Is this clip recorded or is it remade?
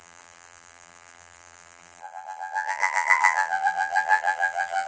remade